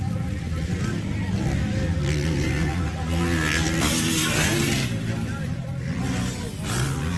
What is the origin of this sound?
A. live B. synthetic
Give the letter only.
A